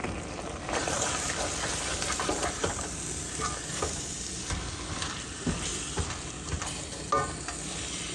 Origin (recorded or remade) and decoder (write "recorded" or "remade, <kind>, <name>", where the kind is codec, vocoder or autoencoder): recorded